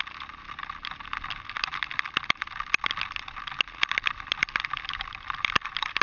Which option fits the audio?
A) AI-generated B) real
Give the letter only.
B